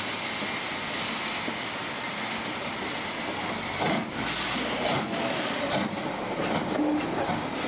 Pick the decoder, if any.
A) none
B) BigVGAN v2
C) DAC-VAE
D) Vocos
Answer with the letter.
A